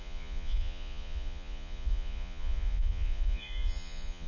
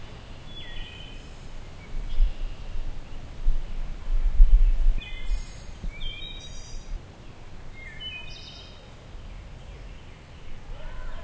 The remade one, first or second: first